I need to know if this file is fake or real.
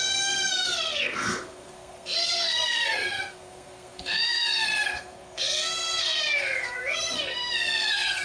fake